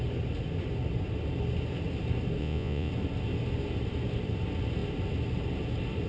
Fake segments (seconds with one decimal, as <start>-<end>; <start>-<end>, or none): 2.4-2.9